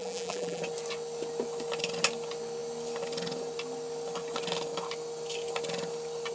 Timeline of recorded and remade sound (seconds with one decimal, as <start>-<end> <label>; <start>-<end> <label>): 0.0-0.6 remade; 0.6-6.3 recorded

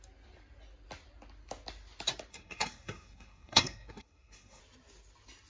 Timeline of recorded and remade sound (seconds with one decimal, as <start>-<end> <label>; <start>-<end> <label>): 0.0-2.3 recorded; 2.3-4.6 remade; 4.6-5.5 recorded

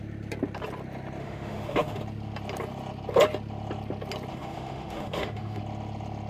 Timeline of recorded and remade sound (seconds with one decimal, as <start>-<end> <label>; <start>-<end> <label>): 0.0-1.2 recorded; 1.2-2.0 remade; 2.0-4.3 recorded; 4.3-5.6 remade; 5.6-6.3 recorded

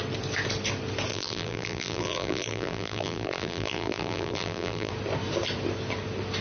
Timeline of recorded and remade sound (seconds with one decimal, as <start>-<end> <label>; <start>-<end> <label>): 0.0-1.1 recorded; 1.1-4.9 remade; 4.9-6.4 recorded